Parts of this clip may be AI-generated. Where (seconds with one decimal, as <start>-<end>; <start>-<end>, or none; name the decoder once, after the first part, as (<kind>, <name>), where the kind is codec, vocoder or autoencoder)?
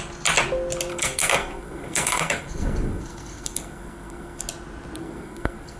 0.9-4.4 (codec, SNAC); 5.0-5.8